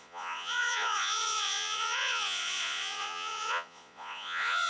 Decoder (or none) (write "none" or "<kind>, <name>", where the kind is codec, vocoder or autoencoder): vocoder, Vocos